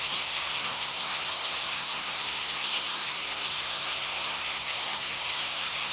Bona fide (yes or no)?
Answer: no